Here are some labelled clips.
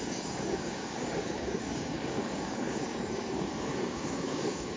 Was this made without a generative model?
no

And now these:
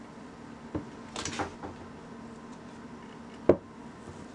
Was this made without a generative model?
yes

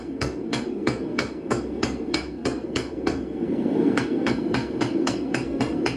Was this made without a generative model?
no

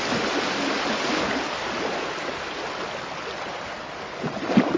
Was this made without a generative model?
yes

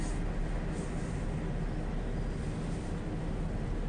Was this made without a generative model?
yes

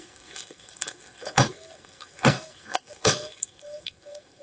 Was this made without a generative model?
no